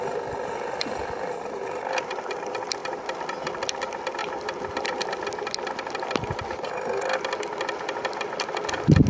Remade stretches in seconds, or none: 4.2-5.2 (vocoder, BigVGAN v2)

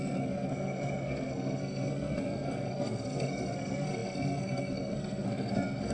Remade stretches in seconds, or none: 0.0-5.9 (codec, SNAC)

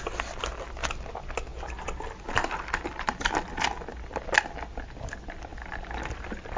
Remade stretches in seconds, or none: none

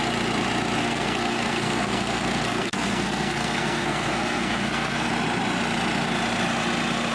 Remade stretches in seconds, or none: 0.8-5.1 (codec, SNAC)

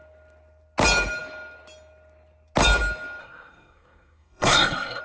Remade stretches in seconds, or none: 3.2-5.0 (codec, SNAC)

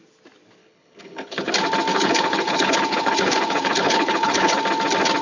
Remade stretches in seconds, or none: 0.6-1.5 (codec, HILCodec); 1.9-4.6

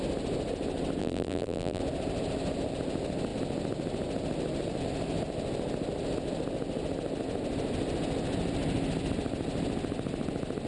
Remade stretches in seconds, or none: 1.0-1.8 (vocoder, BigVGAN v2)